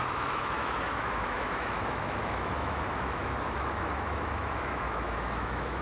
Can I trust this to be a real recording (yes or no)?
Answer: no